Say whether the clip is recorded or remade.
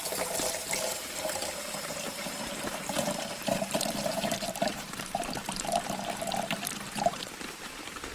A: remade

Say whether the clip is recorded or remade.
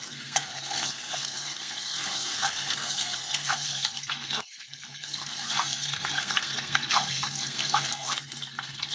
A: remade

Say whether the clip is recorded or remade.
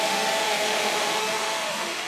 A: remade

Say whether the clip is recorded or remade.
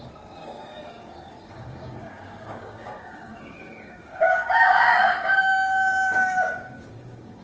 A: remade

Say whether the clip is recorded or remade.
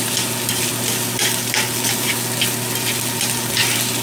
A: recorded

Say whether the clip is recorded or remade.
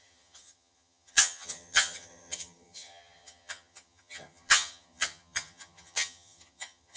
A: remade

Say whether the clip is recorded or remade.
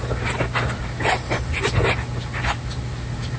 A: recorded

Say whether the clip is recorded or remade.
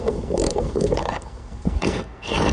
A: remade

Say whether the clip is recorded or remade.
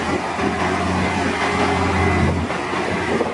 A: recorded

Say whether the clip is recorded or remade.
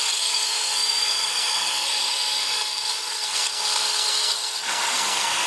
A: remade